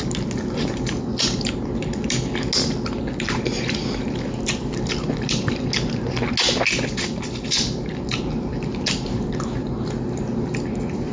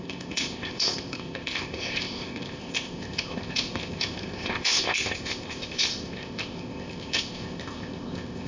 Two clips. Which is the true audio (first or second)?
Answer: first